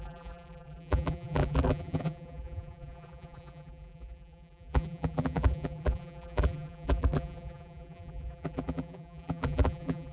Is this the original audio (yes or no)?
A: no